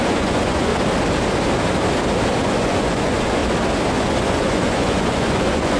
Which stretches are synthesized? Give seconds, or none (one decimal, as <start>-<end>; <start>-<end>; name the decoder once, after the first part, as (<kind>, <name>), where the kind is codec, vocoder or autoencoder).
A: 0.0-0.7 (vocoder, Vocos); 2.4-3.4; 3.9-5.8